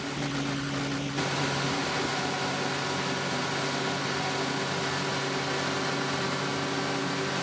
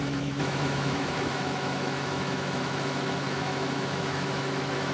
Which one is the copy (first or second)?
second